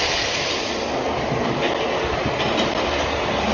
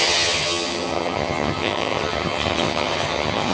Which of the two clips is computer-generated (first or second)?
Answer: second